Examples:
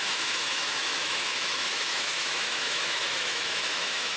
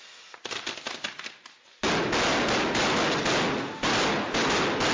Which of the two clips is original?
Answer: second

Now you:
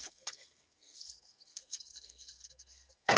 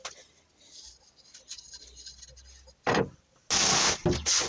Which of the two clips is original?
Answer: second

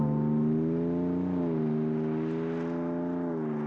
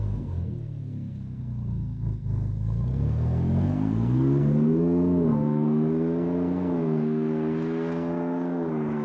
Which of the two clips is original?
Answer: first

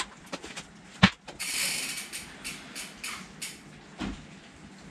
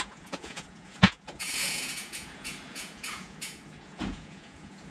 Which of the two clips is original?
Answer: first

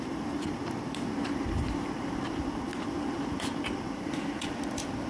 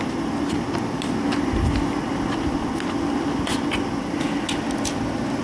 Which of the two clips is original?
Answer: second